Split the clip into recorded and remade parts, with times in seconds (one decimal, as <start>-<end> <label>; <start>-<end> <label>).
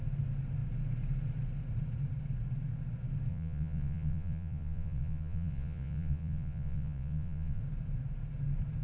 0.0-3.3 recorded; 3.3-7.6 remade; 7.6-8.8 recorded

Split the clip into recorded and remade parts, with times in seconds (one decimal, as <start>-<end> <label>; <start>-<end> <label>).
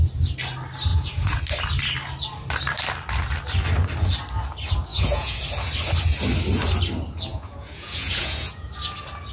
0.0-0.9 recorded; 0.9-1.4 remade; 1.4-4.9 recorded; 4.9-5.4 remade; 5.4-7.3 recorded; 7.3-8.7 remade; 8.7-9.3 recorded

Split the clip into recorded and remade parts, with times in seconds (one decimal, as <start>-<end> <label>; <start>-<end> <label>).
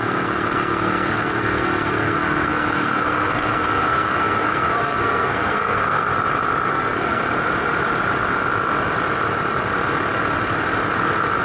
0.0-6.1 remade; 6.1-6.7 recorded; 6.7-7.2 remade; 7.2-11.4 recorded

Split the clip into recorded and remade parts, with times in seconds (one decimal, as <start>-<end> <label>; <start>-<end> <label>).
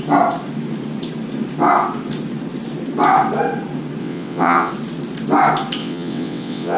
0.0-4.0 recorded; 4.0-4.7 remade; 4.7-5.8 recorded; 5.8-6.8 remade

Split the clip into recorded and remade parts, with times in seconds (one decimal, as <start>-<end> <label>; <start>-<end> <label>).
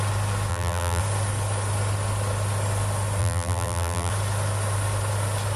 0.0-0.5 recorded; 0.5-1.0 remade; 1.0-3.2 recorded; 3.2-4.1 remade; 4.1-5.6 recorded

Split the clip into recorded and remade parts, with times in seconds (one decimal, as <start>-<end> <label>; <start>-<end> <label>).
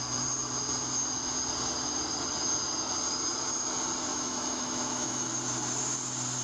0.0-4.1 recorded; 4.1-5.3 remade; 5.3-6.4 recorded